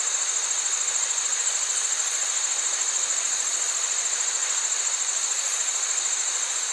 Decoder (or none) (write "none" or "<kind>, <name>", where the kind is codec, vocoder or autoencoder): none